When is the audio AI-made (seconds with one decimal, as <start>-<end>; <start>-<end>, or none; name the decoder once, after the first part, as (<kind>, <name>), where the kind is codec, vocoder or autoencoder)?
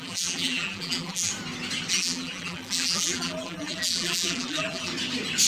0.0-1.3 (vocoder, BigVGAN v2); 1.9-4.9